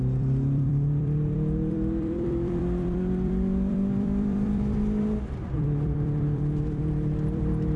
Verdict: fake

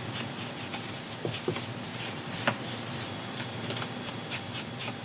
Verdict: fake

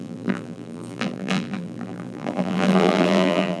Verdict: fake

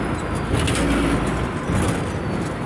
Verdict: real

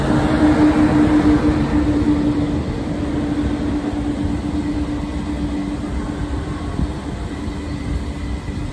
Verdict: real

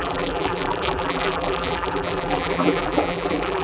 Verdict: fake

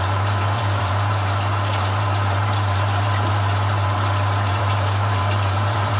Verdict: fake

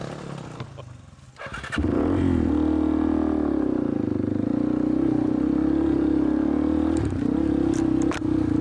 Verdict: real